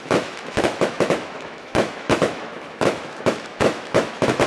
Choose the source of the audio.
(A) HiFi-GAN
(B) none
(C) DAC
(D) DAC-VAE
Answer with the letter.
D